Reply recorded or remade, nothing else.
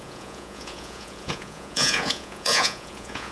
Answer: remade